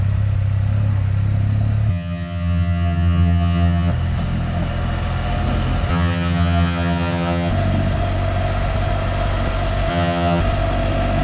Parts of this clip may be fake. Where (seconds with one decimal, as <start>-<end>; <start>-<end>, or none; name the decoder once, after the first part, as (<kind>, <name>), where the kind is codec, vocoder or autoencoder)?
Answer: 1.9-3.9 (vocoder, HiFi-GAN); 5.9-7.5; 9.9-10.4